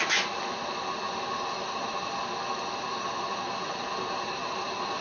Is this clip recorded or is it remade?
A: recorded